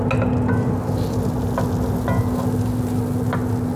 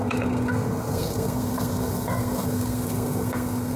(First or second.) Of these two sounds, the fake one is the second